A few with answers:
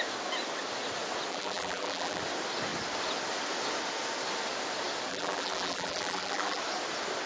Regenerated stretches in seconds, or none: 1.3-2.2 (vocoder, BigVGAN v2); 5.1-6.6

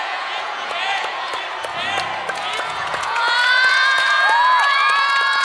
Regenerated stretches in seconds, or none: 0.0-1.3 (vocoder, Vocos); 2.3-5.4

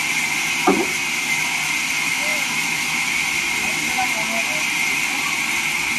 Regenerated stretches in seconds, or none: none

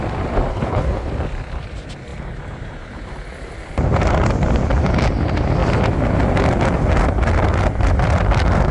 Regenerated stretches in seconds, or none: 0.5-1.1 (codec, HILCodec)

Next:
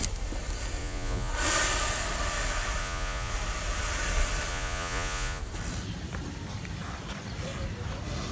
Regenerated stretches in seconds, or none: 0.8-1.3 (vocoder, Vocos); 2.8-3.3; 4.5-5.4

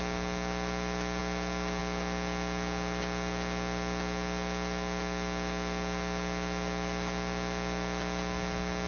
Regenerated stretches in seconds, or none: none

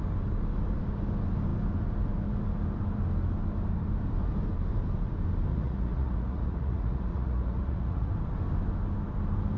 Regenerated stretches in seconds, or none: 5.5-8.1 (vocoder, Vocos)

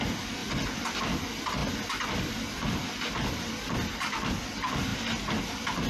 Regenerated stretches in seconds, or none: 0.4-1.0 (vocoder, BigVGAN v2)